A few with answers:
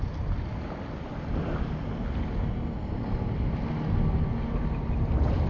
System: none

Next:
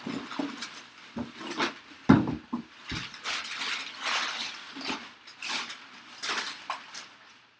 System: none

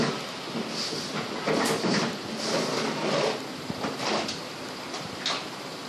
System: none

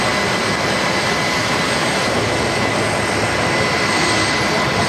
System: none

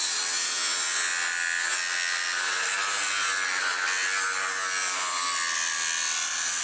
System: none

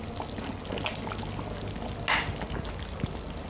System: none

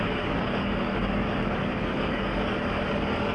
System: codec, DAC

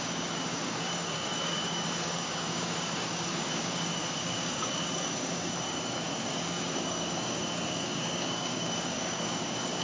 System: codec, DAC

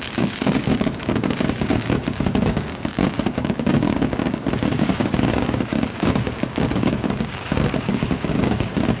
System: codec, DAC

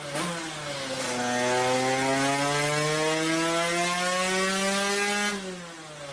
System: none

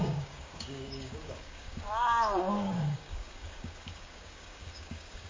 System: codec, DAC